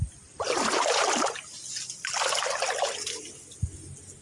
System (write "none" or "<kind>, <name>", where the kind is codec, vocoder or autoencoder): none